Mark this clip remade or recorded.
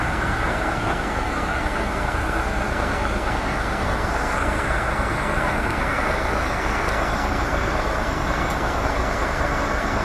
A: remade